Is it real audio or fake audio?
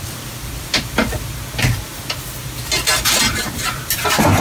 real